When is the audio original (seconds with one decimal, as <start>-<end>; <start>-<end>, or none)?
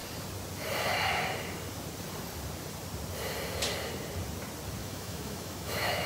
0.0-4.8